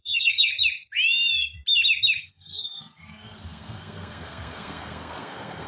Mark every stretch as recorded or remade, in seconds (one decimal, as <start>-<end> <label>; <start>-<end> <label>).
0.0-0.5 remade; 0.5-2.2 recorded; 2.2-5.7 remade